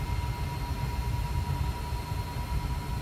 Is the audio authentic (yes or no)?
yes